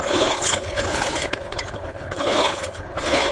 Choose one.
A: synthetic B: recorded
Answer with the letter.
A